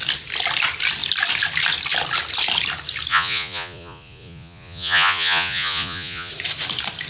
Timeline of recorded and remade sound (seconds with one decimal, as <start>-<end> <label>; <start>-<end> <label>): 0.0-3.1 recorded; 3.1-6.3 remade; 6.3-7.1 recorded